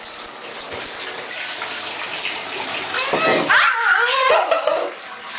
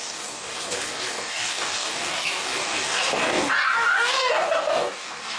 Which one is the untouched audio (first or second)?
first